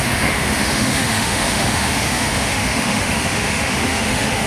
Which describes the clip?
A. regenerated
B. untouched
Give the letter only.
A